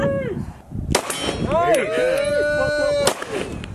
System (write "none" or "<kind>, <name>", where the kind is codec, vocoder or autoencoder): none